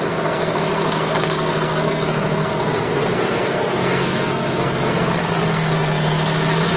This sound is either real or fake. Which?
fake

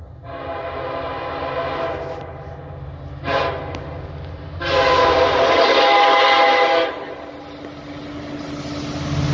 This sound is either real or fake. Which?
real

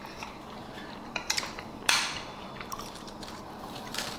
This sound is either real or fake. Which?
fake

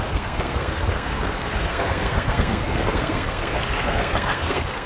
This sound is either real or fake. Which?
fake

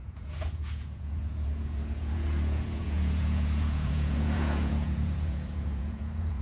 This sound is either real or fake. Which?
fake